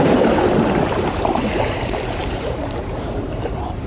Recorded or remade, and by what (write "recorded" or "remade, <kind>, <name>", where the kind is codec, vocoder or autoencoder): remade, vocoder, BigVGAN v2